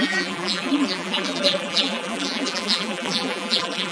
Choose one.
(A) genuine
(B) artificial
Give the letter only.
B